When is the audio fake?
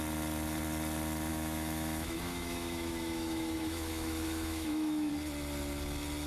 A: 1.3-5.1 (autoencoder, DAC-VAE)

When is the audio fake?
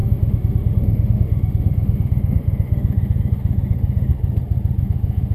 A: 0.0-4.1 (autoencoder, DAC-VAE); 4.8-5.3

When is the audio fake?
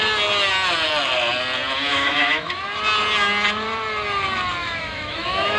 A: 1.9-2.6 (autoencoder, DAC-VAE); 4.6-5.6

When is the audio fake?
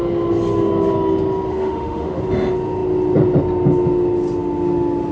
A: 1.5-2.2 (autoencoder, DAC-VAE)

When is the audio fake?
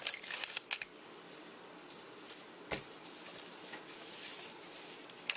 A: none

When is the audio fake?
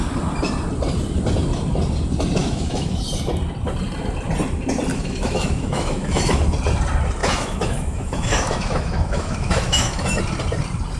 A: 2.4-3.0 (autoencoder, DAC-VAE); 4.9-6.4; 7.2-10.2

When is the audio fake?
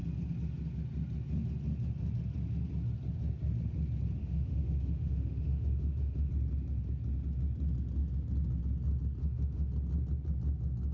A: 4.2-6.3 (autoencoder, DAC-VAE); 9.2-9.7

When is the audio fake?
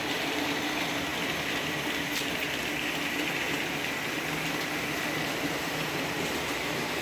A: none